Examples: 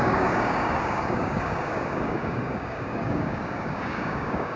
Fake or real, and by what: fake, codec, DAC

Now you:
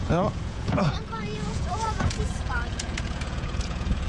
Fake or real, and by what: fake, vocoder, Vocos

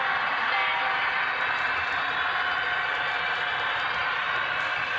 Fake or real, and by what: real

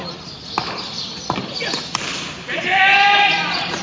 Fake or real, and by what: real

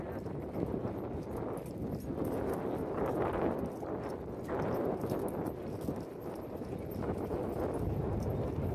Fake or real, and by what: real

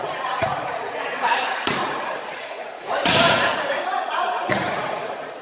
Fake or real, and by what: fake, vocoder, Vocos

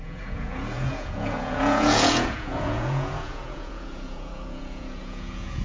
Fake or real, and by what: fake, vocoder, Vocos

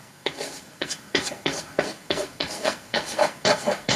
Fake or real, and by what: fake, codec, SNAC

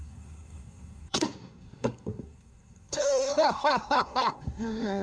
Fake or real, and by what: fake, codec, SNAC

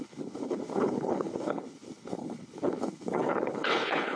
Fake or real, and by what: fake, codec, HILCodec